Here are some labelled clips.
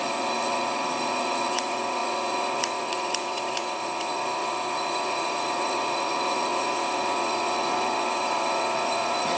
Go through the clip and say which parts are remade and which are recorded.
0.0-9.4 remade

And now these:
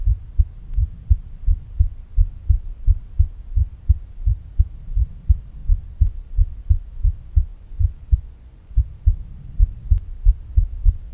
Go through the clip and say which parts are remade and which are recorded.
0.0-7.5 recorded; 7.5-8.8 remade; 8.8-11.1 recorded

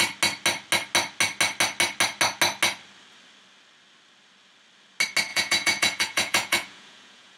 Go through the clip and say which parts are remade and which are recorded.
0.0-5.3 recorded; 5.3-7.4 remade